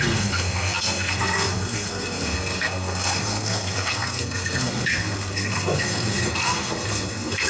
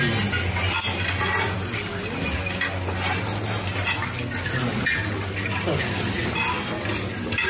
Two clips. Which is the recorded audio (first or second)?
second